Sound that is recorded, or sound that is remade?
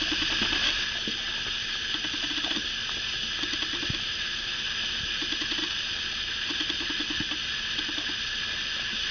recorded